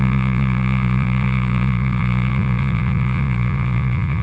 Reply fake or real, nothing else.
fake